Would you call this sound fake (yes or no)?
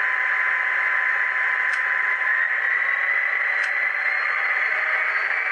no